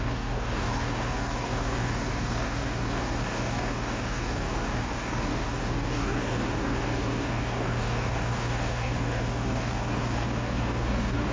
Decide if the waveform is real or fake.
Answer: fake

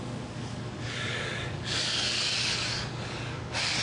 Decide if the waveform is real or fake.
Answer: fake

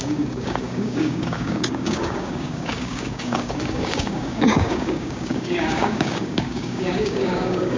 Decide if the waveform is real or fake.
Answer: fake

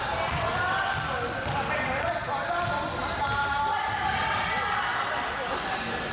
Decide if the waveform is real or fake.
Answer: real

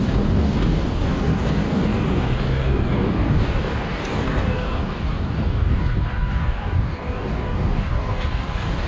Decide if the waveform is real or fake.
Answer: fake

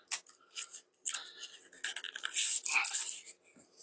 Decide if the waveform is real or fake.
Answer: real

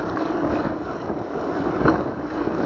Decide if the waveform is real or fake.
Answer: fake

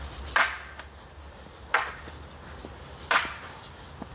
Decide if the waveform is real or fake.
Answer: real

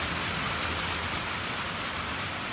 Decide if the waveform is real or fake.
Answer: real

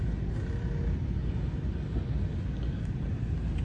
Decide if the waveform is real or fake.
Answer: real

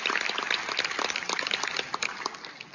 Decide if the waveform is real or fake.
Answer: real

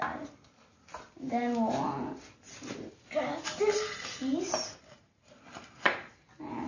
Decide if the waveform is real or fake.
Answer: real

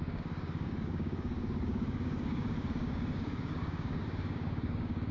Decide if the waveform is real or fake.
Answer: fake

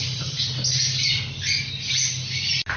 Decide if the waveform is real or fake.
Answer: real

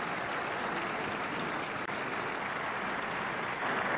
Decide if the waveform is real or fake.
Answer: real